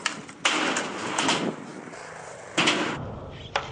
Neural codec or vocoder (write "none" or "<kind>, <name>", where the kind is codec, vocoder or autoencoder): none